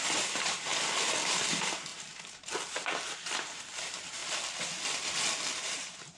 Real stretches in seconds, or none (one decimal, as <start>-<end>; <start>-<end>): 0.7-1.5; 1.9-3.0; 4.2-5.6